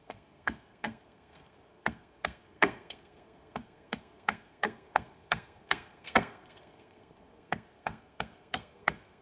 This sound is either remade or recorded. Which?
remade